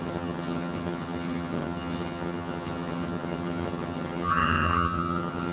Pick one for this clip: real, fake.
fake